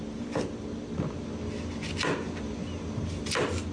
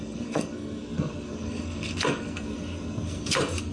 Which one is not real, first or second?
second